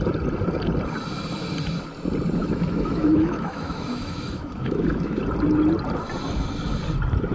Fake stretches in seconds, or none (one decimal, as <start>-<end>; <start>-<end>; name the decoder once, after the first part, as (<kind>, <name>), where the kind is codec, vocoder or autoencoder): 2.4-5.2 (autoencoder, DAC-VAE)